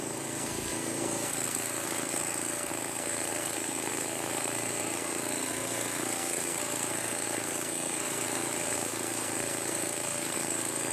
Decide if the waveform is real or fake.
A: fake